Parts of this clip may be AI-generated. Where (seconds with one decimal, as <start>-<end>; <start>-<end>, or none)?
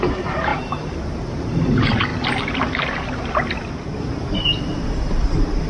0.0-2.1; 4.0-5.7